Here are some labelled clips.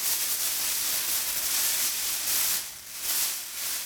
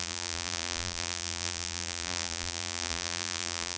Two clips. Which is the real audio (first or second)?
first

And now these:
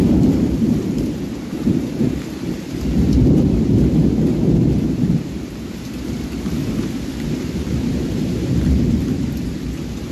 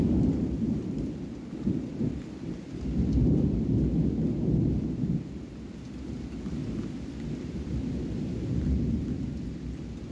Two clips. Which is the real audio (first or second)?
second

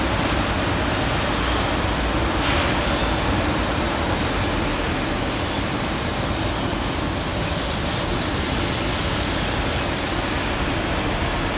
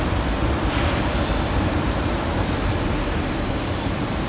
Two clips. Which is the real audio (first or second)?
first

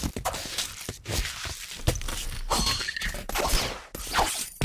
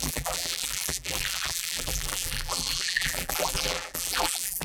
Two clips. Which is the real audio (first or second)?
first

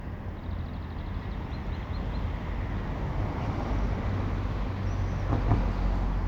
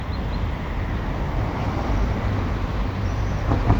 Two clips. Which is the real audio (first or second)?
first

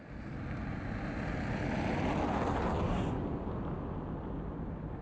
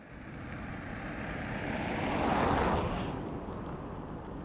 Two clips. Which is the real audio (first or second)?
first